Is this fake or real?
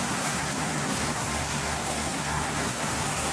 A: fake